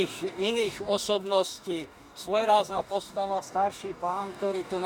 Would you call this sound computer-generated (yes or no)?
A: yes